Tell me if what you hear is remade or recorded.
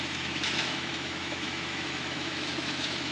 remade